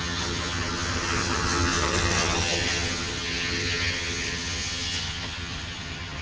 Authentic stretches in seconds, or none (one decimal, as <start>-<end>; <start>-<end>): none

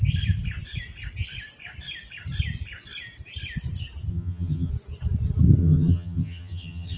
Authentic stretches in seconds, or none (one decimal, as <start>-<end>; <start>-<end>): 0.0-4.1; 4.7-5.6

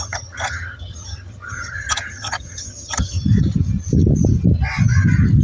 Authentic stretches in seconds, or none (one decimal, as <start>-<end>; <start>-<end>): 3.2-5.4

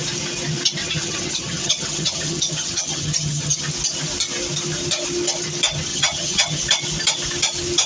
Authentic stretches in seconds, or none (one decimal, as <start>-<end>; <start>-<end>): 0.0-0.8; 3.6-5.9; 6.6-7.9

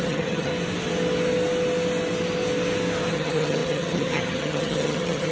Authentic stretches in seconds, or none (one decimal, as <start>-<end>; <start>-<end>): 0.5-3.1

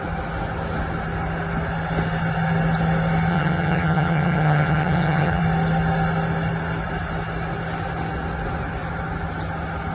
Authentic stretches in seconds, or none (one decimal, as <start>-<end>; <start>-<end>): 0.0-3.3; 5.4-9.9

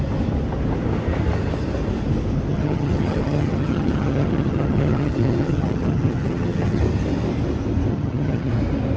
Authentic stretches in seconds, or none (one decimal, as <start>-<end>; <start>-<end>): 0.0-2.5; 6.8-7.9; 8.5-9.0